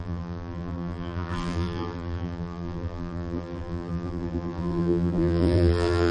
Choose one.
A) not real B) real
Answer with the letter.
A